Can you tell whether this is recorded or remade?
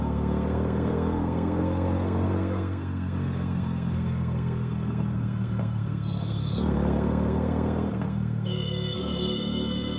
remade